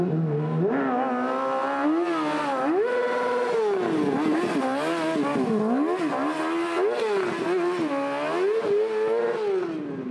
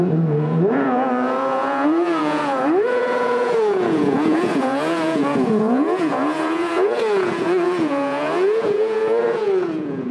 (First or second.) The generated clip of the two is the second